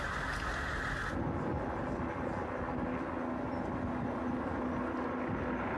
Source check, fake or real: real